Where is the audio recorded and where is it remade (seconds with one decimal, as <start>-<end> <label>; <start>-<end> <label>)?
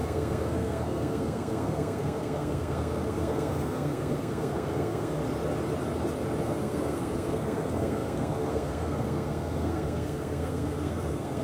0.0-5.2 remade; 5.2-6.4 recorded; 6.4-11.4 remade